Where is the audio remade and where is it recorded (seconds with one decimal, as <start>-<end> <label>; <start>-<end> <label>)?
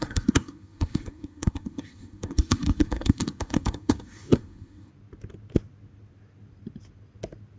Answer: 0.0-4.9 remade; 4.9-7.6 recorded